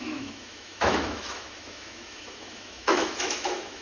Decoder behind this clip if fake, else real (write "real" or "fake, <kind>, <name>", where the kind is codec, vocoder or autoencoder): fake, autoencoder, DAC-VAE